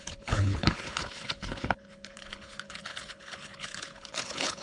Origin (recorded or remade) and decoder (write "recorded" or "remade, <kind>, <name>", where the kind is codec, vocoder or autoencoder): remade, codec, HILCodec